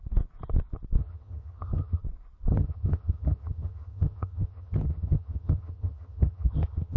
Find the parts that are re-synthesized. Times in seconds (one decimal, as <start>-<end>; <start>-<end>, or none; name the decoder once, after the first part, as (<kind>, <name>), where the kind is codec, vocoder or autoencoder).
1.0-2.0 (vocoder, HiFi-GAN); 2.5-7.0